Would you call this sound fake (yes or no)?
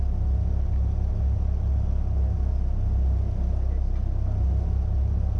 no